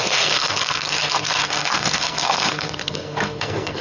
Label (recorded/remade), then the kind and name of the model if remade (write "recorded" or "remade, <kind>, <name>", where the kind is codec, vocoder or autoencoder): remade, codec, SNAC